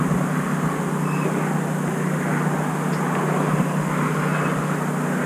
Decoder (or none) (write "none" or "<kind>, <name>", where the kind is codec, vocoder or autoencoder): none